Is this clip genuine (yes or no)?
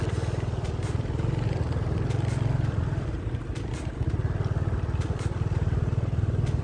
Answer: yes